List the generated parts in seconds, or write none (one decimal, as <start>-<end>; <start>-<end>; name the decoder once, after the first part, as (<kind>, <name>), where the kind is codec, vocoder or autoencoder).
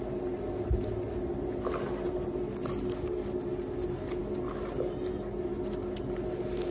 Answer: none